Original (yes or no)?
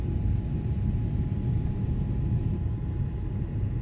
yes